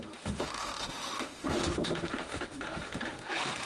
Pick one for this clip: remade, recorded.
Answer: remade